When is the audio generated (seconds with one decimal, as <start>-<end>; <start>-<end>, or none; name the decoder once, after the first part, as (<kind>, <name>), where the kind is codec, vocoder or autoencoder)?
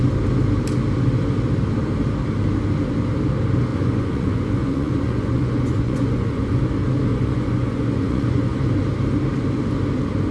3.7-6.6 (vocoder, Vocos); 7.1-8.6